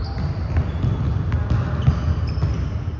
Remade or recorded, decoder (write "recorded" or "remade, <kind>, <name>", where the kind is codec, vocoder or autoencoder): recorded